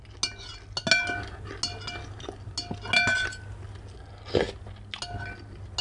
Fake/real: real